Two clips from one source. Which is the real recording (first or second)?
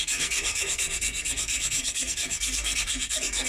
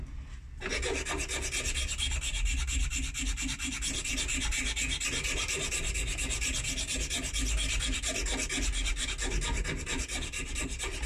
second